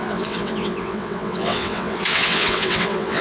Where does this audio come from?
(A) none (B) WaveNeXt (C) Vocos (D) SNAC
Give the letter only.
B